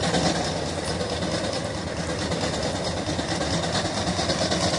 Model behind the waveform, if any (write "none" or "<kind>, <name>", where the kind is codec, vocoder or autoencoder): none